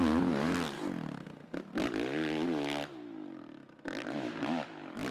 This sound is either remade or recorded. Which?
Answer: recorded